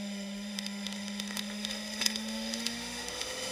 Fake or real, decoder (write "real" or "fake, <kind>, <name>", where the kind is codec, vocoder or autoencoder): fake, autoencoder, DAC-VAE